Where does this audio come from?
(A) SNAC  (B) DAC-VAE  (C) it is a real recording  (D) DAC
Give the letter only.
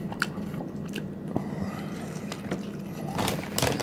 C